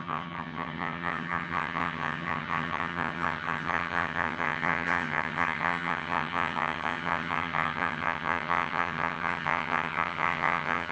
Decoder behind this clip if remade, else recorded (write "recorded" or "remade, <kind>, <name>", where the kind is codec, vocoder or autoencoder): remade, vocoder, HiFi-GAN